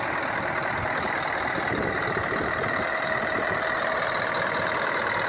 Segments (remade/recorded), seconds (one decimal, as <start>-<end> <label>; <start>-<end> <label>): 0.0-5.3 recorded